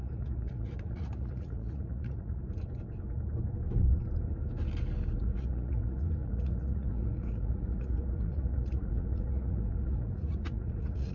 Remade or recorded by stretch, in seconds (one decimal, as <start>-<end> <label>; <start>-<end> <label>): 0.0-2.4 remade; 2.4-5.2 recorded; 5.2-11.1 remade